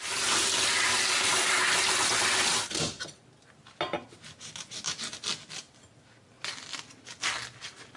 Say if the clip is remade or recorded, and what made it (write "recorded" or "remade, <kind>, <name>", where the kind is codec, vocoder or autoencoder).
recorded